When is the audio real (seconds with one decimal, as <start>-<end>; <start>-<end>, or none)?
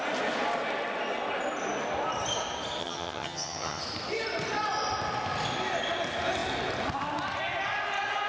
0.0-2.8; 3.8-8.3